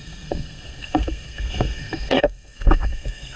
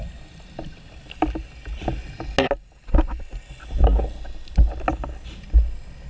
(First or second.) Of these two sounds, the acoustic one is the second